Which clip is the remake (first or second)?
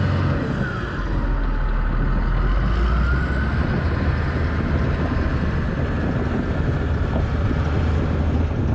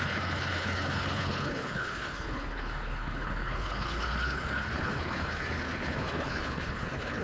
second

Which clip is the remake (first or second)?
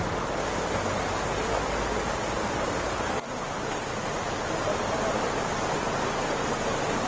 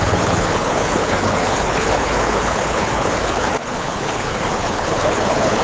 second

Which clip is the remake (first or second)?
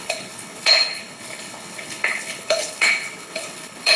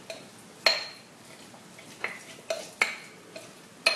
first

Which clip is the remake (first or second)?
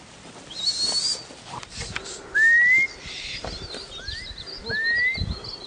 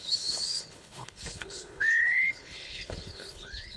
second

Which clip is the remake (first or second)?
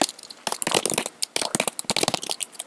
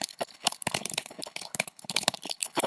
second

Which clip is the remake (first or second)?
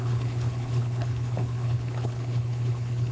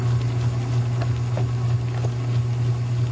first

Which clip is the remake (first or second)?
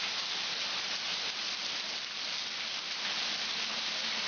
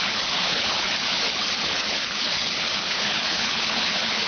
second